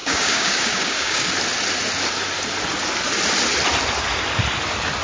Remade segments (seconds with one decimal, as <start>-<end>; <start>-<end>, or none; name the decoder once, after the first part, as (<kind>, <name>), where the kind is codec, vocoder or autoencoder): 0.0-1.3 (codec, DAC)